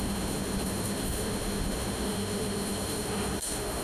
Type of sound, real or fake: fake